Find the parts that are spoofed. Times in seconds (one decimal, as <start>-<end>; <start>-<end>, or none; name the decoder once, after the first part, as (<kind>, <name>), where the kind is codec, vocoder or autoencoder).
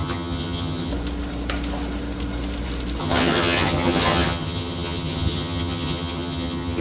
0.0-0.9 (vocoder, HiFi-GAN); 3.0-6.8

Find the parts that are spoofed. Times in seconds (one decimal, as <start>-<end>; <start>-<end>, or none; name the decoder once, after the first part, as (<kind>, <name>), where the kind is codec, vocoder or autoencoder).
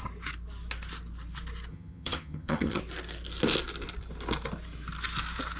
1.7-2.8 (vocoder, HiFi-GAN)